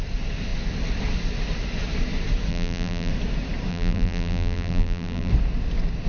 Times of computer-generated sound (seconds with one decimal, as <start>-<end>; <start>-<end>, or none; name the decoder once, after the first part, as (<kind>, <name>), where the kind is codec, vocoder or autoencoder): 2.5-3.1 (vocoder, BigVGAN v2); 3.7-5.3